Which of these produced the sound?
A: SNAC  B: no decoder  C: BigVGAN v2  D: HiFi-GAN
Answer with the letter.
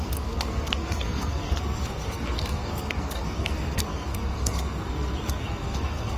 A